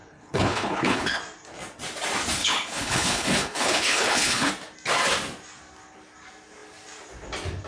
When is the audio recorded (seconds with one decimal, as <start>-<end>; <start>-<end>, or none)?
1.2-2.4; 4.5-7.7